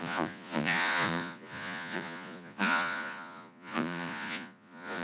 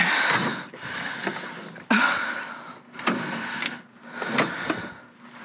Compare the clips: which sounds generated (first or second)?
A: first